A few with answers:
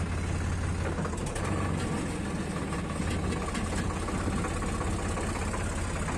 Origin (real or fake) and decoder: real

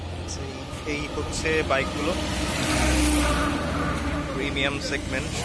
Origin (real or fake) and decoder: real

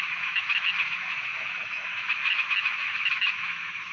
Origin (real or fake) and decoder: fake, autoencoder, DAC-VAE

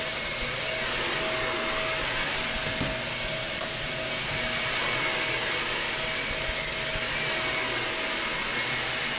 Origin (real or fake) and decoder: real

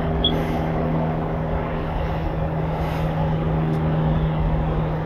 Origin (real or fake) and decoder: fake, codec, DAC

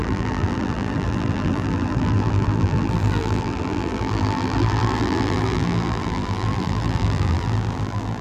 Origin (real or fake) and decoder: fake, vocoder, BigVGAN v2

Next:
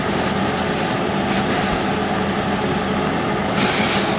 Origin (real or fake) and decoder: real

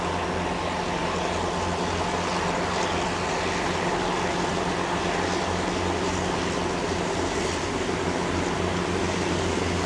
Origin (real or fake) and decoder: real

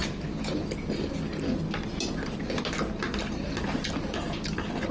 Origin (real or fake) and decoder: real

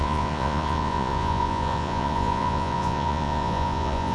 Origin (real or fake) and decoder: fake, vocoder, Vocos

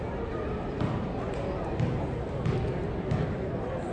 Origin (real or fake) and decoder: real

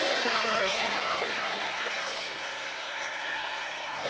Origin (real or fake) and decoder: fake, codec, SNAC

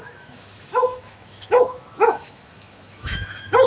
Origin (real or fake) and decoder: fake, autoencoder, DAC-VAE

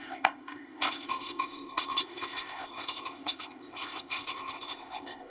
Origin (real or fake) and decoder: fake, codec, ZipCodec